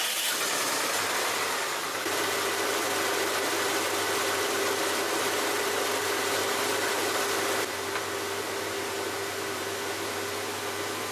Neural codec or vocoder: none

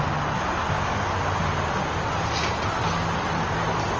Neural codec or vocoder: none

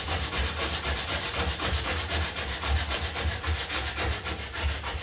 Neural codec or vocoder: vocoder, BigVGAN v2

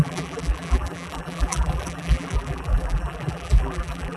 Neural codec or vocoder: vocoder, BigVGAN v2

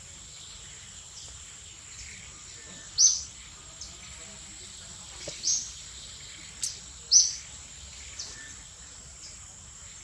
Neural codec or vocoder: none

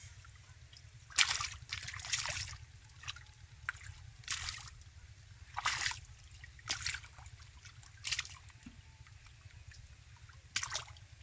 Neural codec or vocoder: none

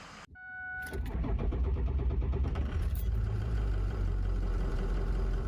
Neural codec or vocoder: vocoder, BigVGAN v2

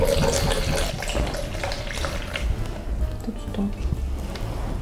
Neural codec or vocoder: none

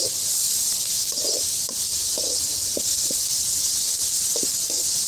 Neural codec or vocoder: vocoder, BigVGAN v2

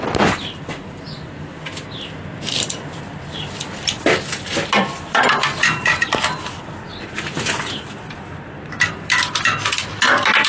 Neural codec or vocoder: vocoder, BigVGAN v2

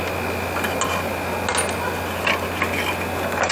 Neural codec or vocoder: none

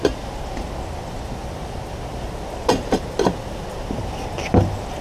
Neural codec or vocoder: none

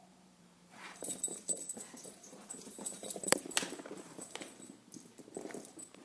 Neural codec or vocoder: vocoder, BigVGAN v2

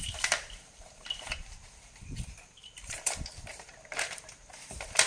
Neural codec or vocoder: vocoder, BigVGAN v2